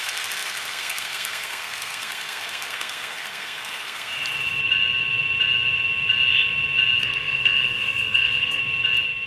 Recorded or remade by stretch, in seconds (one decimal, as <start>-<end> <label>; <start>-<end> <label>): 0.0-4.1 remade; 4.1-7.0 recorded; 7.0-8.6 remade; 8.6-9.3 recorded